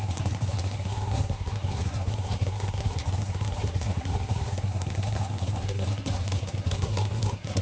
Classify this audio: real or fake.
fake